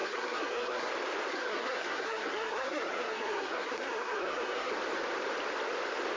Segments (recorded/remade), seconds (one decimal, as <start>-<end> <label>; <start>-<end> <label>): 0.0-0.9 remade; 0.9-1.3 recorded; 1.3-4.7 remade; 4.7-6.2 recorded